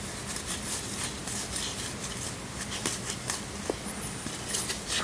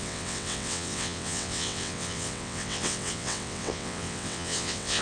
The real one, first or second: first